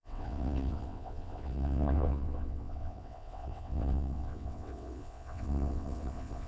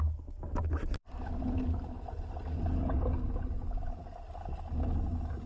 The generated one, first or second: first